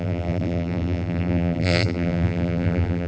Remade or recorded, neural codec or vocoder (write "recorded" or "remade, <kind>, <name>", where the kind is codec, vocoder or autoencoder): remade, vocoder, BigVGAN v2